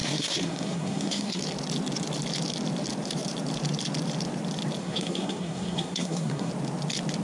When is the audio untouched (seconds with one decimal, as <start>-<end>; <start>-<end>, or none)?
1.4-4.8; 6.5-7.2